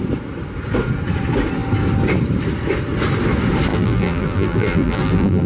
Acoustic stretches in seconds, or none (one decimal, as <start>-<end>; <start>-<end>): 0.0-3.7